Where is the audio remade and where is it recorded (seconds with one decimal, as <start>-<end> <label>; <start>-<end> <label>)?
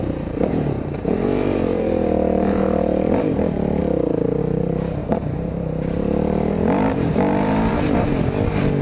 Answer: 0.0-3.8 remade; 3.8-4.4 recorded; 4.4-8.1 remade; 8.1-8.8 recorded